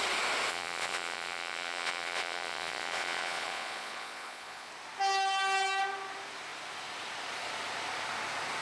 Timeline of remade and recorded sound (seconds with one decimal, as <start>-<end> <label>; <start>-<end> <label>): 0.0-0.5 recorded; 0.5-4.7 remade; 4.7-8.6 recorded